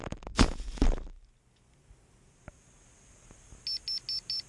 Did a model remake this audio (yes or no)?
no